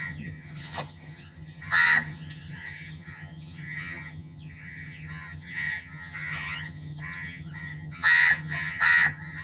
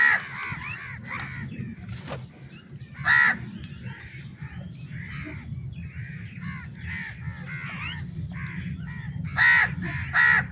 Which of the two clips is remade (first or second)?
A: first